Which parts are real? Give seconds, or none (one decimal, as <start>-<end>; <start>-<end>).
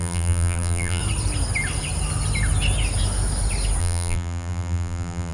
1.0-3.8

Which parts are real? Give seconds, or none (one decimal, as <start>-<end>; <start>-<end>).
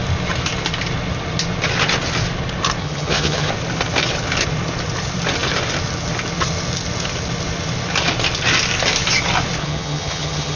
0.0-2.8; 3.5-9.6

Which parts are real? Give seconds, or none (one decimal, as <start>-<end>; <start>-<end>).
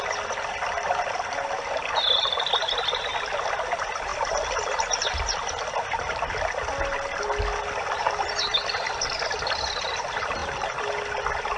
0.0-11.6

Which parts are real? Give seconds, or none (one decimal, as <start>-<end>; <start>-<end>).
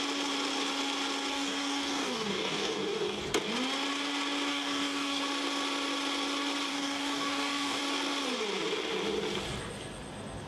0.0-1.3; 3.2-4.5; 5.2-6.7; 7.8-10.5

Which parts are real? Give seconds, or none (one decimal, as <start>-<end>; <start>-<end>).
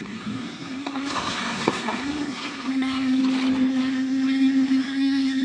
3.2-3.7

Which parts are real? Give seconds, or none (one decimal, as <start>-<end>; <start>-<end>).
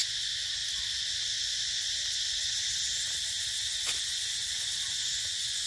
0.6-4.0; 4.4-4.9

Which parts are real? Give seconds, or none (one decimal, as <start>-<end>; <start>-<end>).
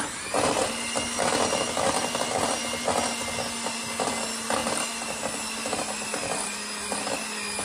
0.0-7.6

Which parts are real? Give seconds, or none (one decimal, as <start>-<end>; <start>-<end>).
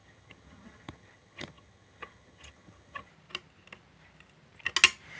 3.1-5.2